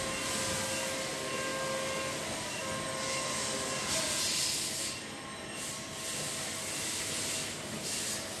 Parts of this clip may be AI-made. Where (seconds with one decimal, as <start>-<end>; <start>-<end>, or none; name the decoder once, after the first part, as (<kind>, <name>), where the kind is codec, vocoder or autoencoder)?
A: none